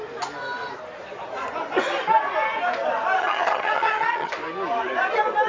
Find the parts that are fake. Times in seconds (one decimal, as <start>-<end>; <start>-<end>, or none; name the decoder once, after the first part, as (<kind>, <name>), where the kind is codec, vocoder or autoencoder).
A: 3.2-4.3 (vocoder, HiFi-GAN)